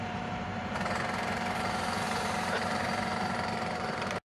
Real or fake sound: fake